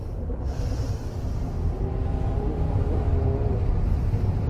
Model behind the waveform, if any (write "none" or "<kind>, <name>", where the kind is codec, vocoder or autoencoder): none